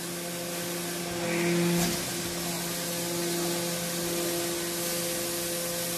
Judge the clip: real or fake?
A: real